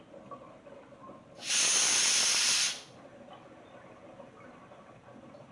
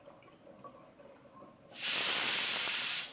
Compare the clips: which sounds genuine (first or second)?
first